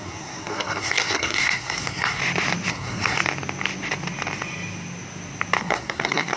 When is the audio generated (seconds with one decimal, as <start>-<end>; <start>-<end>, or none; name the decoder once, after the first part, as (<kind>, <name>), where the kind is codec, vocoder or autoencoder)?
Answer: 0.0-2.2 (codec, SNAC); 2.7-3.2; 5.6-6.4

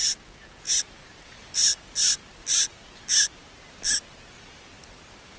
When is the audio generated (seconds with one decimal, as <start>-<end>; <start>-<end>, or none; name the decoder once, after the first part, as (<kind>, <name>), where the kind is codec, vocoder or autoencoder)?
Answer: 0.0-0.8 (vocoder, Vocos)

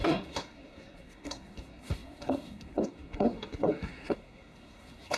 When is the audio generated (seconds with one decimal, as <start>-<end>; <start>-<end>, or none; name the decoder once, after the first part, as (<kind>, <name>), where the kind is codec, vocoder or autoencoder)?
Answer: 0.0-5.2 (codec, SNAC)

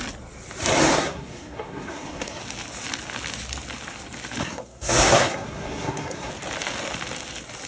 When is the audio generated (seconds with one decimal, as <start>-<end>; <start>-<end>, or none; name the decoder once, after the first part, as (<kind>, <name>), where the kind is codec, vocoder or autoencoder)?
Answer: 0.9-2.4 (codec, SNAC); 4.4-6.3

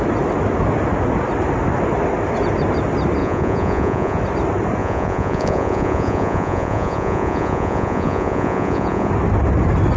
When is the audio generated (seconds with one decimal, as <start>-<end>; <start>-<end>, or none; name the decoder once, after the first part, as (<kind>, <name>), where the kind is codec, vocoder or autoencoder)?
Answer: 3.2-4.2 (vocoder, Vocos); 4.8-9.1